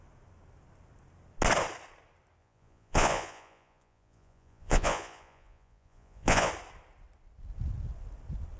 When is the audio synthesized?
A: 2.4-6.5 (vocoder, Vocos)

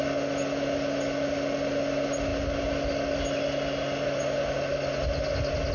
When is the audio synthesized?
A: none

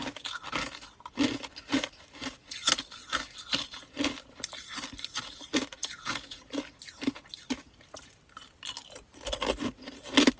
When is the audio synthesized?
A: 5.8-6.4 (vocoder, Vocos)

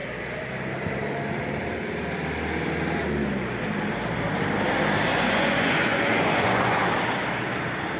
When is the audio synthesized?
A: 5.1-6.9 (vocoder, Vocos)

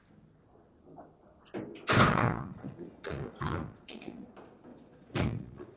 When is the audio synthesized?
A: 2.1-4.3 (vocoder, Vocos); 4.7-5.8

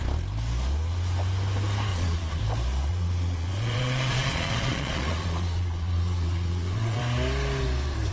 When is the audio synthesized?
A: 1.9-2.4 (vocoder, Vocos); 2.9-7.0